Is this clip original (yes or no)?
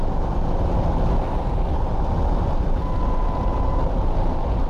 yes